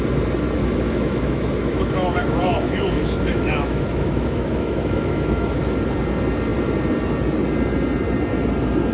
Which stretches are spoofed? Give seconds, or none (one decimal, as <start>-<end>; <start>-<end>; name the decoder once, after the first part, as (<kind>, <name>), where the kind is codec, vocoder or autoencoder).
0.6-5.6 (autoencoder, DAC-VAE)